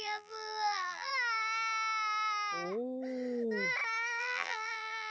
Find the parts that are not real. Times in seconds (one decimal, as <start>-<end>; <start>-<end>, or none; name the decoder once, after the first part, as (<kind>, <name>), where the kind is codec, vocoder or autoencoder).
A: 0.0-1.1 (vocoder, BigVGAN v2); 4.2-5.1